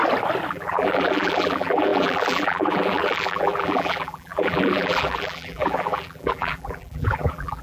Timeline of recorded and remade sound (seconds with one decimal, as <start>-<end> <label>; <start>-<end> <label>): 0.0-0.5 recorded; 0.5-7.6 remade